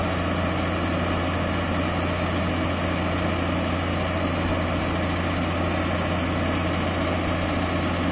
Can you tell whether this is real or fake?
real